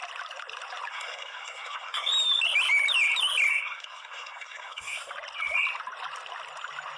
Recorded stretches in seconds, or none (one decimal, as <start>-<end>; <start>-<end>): 0.0-0.9; 2.1-3.5; 5.1-7.0